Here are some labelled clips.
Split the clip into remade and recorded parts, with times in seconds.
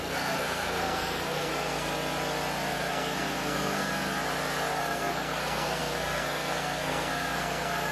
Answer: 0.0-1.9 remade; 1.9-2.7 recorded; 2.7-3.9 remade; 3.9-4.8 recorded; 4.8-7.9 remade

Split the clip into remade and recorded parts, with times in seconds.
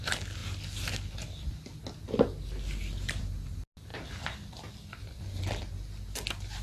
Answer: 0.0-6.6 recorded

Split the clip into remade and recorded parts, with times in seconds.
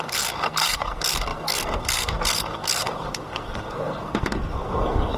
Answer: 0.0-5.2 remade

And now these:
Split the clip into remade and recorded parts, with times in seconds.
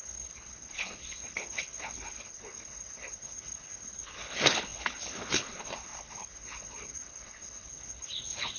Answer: 0.0-8.6 remade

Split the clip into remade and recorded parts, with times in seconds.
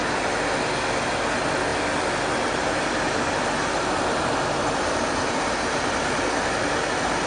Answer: 0.0-3.6 recorded; 3.6-6.7 remade; 6.7-7.3 recorded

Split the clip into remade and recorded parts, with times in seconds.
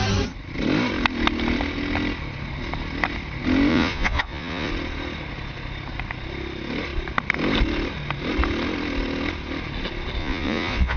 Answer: 0.0-3.7 recorded; 3.7-4.7 remade; 4.7-10.2 recorded; 10.2-11.0 remade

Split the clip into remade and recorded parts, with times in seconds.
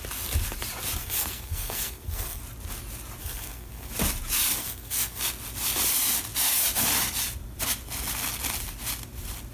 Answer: 0.0-1.0 recorded; 1.0-2.4 remade; 2.4-3.2 recorded; 3.2-3.9 remade; 3.9-4.6 recorded; 4.6-5.2 remade; 5.2-9.5 recorded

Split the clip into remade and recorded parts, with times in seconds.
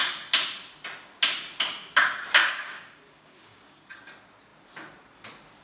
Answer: 0.0-2.4 recorded; 2.4-4.0 remade; 4.0-5.6 recorded